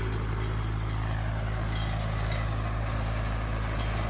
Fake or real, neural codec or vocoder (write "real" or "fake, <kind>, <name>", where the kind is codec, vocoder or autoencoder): real